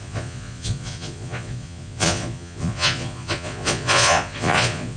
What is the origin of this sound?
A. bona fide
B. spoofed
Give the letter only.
B